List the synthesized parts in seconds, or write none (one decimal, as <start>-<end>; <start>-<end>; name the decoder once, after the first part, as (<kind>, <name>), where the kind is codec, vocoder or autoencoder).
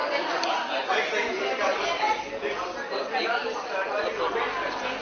none